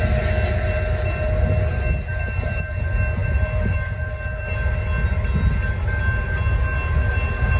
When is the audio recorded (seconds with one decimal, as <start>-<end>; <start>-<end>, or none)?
0.0-7.6